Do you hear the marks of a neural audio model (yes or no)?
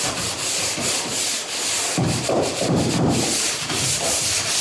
no